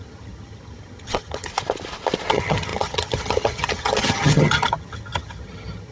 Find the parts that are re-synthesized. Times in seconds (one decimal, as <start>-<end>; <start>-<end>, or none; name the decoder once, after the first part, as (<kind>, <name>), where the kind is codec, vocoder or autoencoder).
0.0-1.5 (vocoder, HiFi-GAN); 2.3-5.9